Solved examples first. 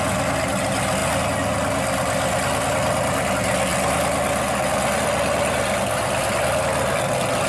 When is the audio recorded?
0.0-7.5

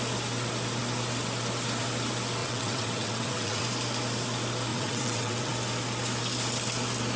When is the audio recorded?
0.0-2.4; 3.6-4.7; 5.5-7.2

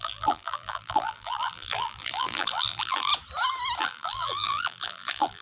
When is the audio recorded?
3.1-3.8